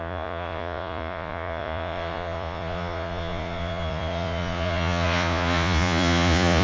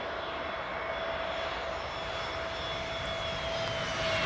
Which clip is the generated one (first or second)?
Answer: first